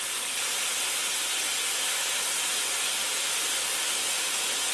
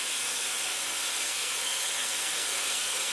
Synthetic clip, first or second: second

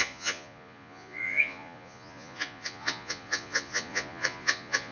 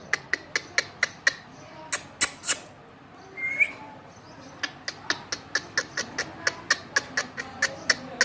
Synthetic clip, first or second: first